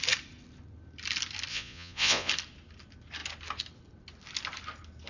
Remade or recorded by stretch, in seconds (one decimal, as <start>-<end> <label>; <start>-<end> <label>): 0.0-1.5 recorded; 1.5-2.3 remade; 2.3-5.1 recorded